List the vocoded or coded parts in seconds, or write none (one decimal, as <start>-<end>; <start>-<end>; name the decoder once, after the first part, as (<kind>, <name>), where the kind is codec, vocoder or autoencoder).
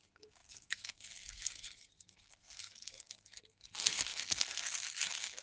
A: 0.0-5.4 (codec, SNAC)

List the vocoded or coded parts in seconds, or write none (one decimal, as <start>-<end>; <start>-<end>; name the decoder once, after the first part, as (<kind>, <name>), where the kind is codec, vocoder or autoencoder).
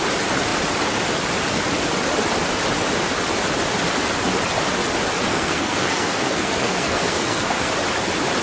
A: 5.3-7.7 (codec, SNAC)